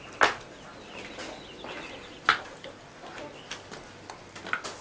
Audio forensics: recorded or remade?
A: recorded